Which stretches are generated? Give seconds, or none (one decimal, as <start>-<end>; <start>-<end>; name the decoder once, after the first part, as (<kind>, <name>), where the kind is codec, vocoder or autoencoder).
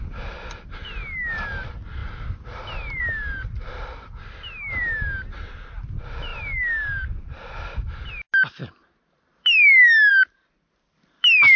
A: none